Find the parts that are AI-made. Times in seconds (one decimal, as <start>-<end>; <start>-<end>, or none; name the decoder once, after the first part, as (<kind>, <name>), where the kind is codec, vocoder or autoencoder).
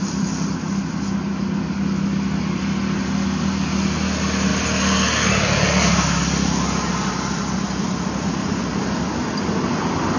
none